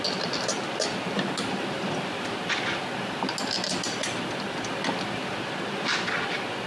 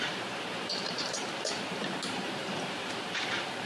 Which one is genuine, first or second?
first